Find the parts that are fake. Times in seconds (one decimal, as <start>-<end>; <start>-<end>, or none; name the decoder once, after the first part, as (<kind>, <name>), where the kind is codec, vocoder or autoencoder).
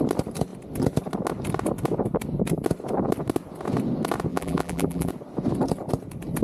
4.3-5.1 (vocoder, BigVGAN v2)